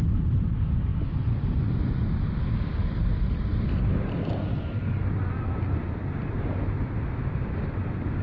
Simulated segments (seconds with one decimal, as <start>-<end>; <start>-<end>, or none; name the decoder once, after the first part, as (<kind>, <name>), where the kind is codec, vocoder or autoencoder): none